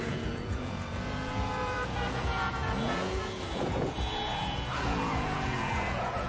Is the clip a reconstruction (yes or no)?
yes